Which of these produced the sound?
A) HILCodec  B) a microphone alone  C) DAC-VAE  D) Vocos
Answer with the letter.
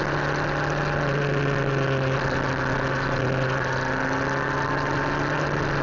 B